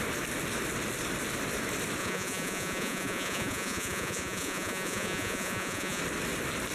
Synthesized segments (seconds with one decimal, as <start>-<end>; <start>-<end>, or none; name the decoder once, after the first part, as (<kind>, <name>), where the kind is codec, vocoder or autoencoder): 2.0-6.0 (vocoder, Vocos)